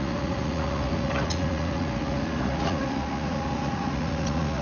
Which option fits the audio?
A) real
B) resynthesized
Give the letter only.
B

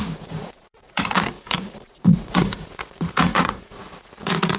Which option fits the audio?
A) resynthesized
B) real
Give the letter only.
A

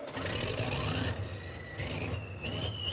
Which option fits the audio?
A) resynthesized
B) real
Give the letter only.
B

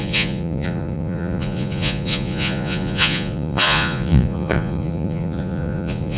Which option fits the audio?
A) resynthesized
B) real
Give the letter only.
A